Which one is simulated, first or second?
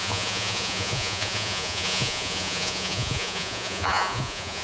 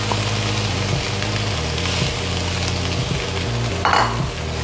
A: first